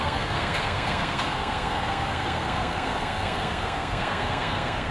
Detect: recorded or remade remade